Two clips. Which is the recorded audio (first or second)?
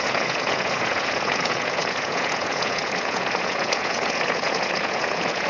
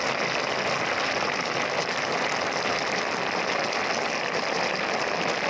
second